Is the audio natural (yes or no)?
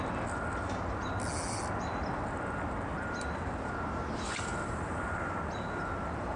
yes